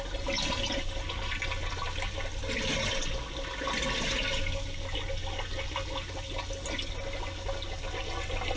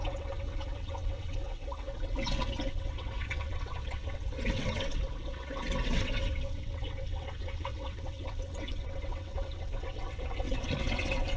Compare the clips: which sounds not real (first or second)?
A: second